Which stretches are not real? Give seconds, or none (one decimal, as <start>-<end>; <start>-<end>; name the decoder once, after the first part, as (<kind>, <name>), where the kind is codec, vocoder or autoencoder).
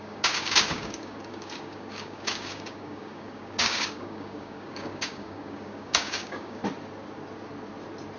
0.0-6.6 (codec, DAC)